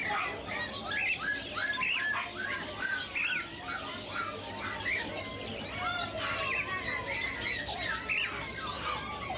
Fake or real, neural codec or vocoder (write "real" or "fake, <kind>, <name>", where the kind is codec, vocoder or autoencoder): real